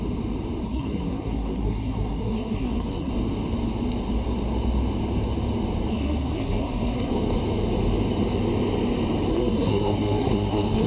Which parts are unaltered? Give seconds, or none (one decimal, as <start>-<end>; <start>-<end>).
0.0-0.6; 3.1-5.9; 7.1-9.3